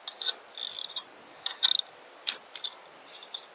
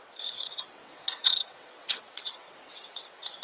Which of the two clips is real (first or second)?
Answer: first